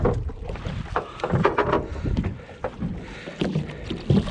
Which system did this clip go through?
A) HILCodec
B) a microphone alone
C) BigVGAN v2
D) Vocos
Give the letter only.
B